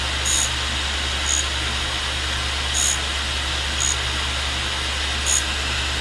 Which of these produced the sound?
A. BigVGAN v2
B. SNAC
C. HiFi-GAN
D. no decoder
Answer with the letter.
D